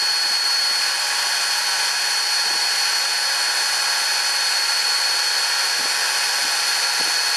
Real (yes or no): yes